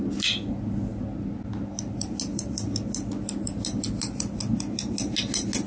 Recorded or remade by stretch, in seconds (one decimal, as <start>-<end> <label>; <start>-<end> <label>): 0.0-5.7 recorded

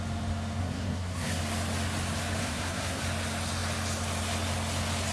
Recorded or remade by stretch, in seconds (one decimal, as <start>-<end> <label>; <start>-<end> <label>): 0.0-0.6 recorded; 0.6-1.4 remade; 1.4-2.4 recorded; 2.4-3.0 remade; 3.0-5.1 recorded

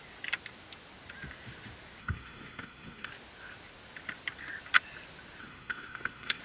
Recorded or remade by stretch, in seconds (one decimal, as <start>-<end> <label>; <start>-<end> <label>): 0.0-2.0 recorded; 2.0-3.1 remade; 3.1-5.4 recorded; 5.4-6.4 remade

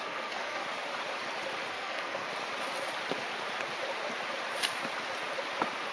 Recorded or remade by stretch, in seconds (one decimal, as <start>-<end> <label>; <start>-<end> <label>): 0.0-0.6 remade; 0.6-1.7 recorded; 1.7-2.3 remade; 2.3-5.9 recorded